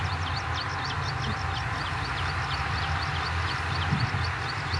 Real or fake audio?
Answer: real